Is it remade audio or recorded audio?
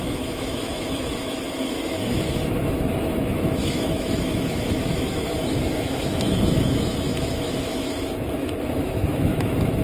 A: remade